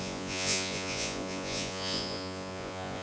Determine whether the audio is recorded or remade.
remade